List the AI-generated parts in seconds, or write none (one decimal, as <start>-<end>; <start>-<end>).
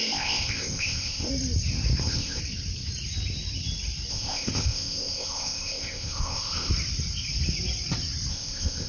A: 0.0-1.3; 2.0-2.4; 4.1-6.7; 8.3-8.9